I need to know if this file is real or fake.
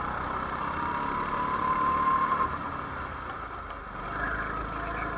real